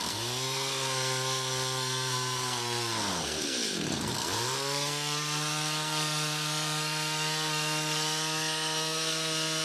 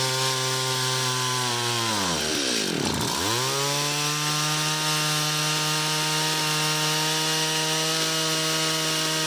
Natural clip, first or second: second